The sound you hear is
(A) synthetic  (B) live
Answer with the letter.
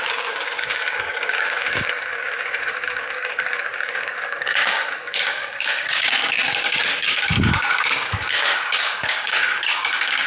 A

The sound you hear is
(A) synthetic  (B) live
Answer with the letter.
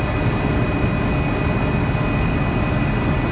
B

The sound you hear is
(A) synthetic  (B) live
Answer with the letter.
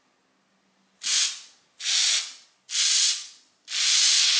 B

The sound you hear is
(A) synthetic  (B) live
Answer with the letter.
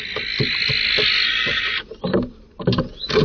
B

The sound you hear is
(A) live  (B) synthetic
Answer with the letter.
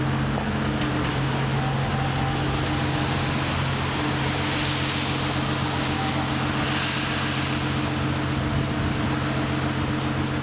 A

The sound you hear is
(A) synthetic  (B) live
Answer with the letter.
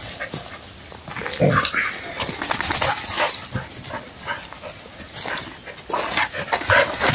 B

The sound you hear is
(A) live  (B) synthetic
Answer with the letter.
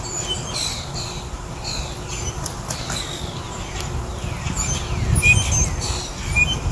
A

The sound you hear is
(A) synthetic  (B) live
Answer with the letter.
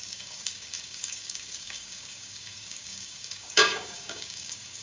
A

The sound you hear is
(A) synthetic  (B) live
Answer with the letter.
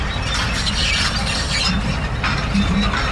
B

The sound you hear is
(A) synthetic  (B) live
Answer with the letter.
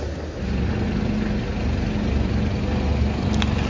B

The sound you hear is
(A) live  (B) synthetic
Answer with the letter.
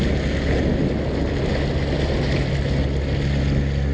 A